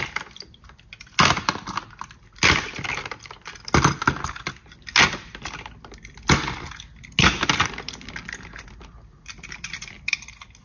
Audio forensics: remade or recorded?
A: recorded